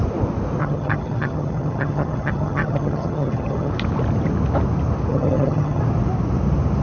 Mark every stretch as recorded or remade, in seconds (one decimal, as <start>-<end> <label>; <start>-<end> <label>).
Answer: 0.0-0.6 recorded; 0.6-3.7 remade; 3.7-5.1 recorded; 5.1-5.8 remade; 5.8-6.8 recorded

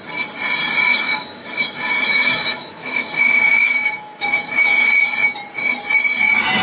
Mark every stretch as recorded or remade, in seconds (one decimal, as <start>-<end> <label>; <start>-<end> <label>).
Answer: 0.0-0.9 recorded; 0.9-4.9 remade; 4.9-6.6 recorded

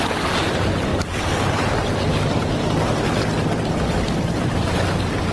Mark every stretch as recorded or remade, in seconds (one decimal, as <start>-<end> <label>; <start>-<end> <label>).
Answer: 0.0-5.3 recorded

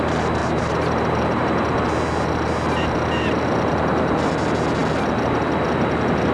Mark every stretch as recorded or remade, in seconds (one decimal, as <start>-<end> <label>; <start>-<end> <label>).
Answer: 0.0-0.4 recorded; 0.4-1.4 remade; 1.4-6.3 recorded